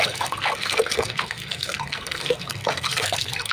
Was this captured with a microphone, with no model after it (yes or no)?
no